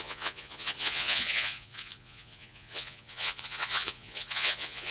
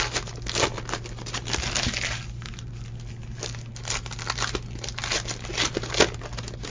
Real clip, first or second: second